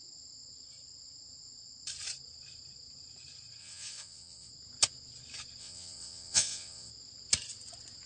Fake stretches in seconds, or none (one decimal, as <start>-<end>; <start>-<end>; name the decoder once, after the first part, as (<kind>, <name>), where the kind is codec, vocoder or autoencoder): 3.6-4.5 (vocoder, WaveNeXt); 5.6-6.9